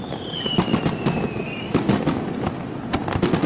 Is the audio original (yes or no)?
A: yes